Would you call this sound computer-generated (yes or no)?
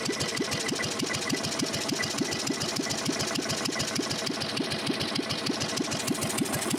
no